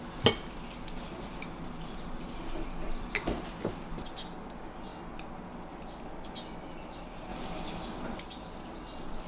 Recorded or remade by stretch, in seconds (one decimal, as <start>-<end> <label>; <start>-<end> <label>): 0.0-9.3 recorded